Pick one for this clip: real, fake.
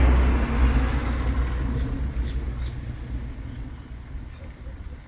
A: real